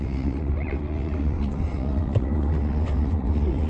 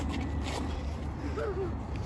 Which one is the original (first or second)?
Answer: second